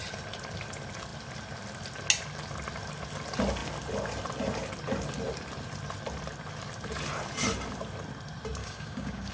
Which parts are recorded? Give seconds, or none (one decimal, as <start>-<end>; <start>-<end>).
0.0-8.6